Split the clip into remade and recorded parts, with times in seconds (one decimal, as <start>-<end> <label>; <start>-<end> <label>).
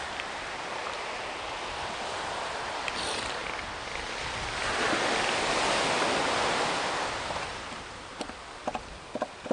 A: 0.0-9.5 recorded